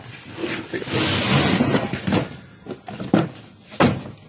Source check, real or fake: real